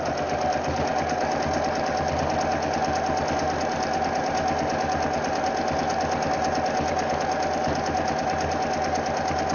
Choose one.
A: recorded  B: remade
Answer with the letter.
A